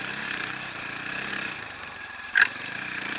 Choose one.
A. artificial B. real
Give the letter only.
A